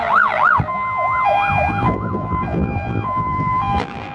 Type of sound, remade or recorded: remade